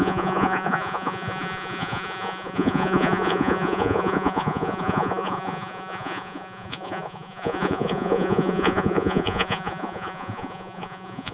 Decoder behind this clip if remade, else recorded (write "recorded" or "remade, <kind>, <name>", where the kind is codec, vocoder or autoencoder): remade, vocoder, Vocos